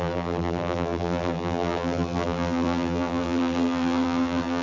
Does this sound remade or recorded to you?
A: remade